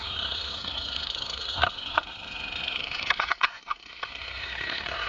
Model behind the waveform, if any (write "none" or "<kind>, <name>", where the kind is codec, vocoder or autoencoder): codec, SNAC